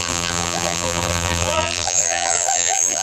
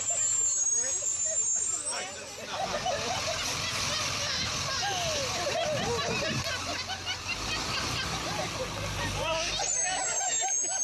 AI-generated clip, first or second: first